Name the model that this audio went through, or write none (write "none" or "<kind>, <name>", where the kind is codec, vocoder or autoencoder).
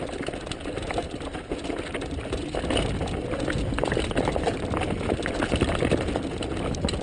none